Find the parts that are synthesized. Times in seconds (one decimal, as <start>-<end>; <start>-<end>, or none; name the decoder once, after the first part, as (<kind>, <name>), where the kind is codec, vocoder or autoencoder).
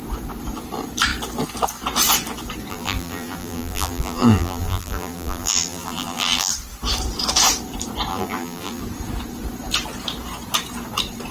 2.7-6.5 (vocoder, BigVGAN v2); 8.1-8.8